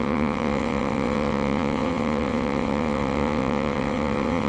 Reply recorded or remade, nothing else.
remade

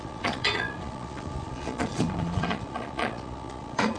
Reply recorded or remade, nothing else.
remade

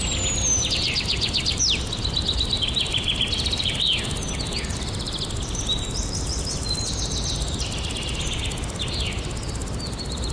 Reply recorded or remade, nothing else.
recorded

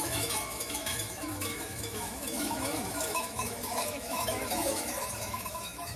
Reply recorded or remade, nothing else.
remade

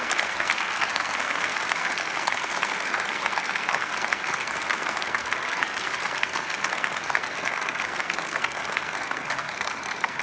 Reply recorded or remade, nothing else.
remade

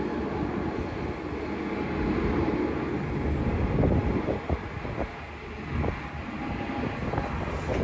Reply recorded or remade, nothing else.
recorded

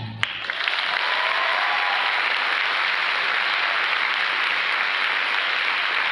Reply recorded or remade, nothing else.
recorded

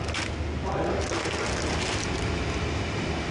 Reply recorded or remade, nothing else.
recorded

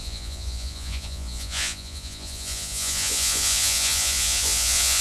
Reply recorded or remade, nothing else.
remade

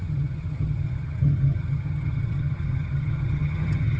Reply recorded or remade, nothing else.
remade